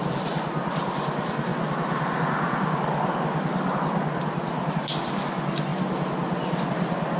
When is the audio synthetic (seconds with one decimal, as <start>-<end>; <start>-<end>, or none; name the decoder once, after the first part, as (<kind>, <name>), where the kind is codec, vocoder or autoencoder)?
none